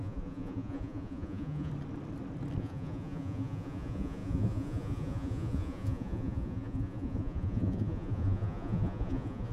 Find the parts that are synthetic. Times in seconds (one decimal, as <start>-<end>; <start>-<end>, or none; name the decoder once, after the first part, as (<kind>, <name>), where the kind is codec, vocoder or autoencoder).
0.0-1.7 (vocoder, Vocos); 2.6-9.5